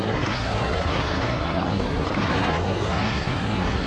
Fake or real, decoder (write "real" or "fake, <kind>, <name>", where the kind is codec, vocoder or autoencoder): fake, codec, SNAC